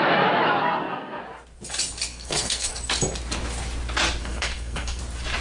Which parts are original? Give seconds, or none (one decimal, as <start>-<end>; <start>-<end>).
0.0-0.6; 1.2-2.1; 2.8-4.2; 5.0-5.4

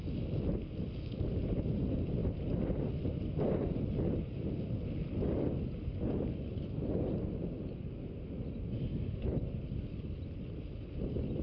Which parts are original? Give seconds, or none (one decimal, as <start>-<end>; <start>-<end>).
0.0-11.4

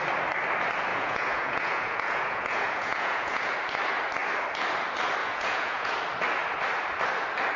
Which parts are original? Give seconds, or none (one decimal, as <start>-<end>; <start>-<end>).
0.0-0.9; 3.5-5.2; 6.0-7.6

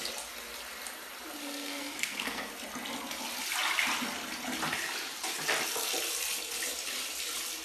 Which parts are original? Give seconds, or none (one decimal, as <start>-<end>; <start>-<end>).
0.0-1.4; 2.5-7.6

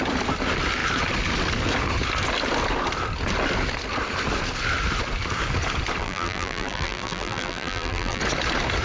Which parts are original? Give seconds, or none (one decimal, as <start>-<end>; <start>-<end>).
0.0-6.0; 8.2-8.8

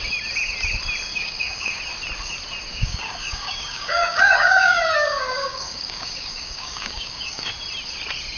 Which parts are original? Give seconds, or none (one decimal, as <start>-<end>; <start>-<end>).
0.0-1.1; 1.8-2.7; 7.5-8.4

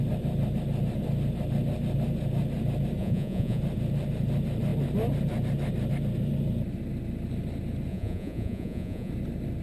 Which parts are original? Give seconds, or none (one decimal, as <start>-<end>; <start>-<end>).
0.0-3.0; 3.6-7.9; 9.1-9.6

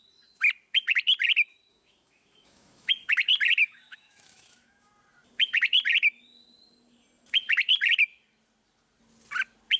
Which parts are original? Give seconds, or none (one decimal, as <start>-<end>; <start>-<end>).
0.0-1.7; 2.9-3.6; 4.9-9.8